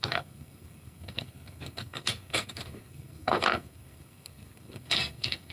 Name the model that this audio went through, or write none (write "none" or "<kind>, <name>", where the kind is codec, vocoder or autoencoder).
codec, SNAC